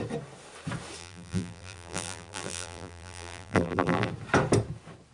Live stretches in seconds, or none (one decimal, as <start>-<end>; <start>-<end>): 0.0-1.0; 4.1-5.1